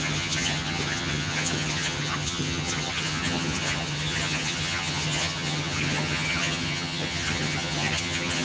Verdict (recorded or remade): remade